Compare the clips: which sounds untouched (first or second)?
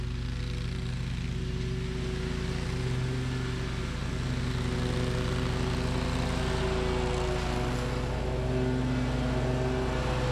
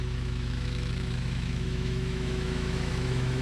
first